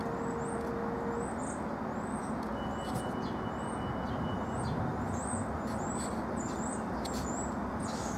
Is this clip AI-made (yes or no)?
no